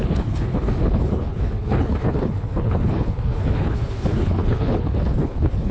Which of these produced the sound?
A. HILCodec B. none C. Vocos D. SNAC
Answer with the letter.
A